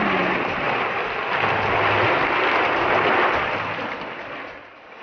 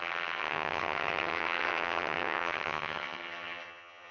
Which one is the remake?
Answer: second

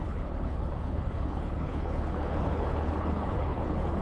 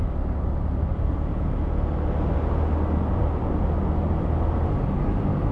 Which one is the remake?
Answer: first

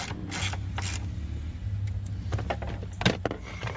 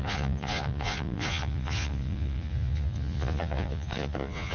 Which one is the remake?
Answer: second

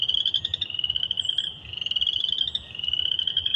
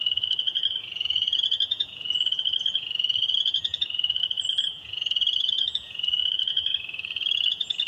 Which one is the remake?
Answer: second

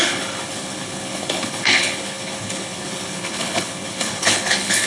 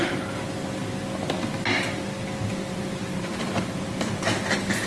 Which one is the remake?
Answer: first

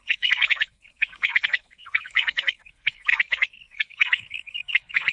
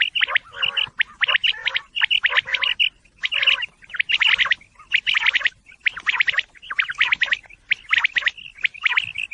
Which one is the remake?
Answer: first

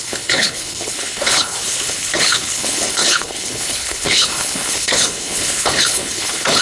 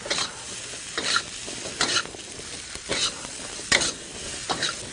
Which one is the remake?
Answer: first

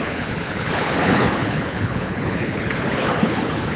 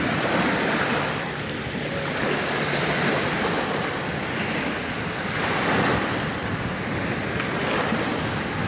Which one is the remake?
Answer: first